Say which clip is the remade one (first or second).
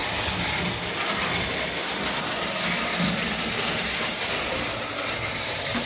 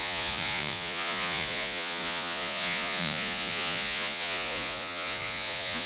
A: second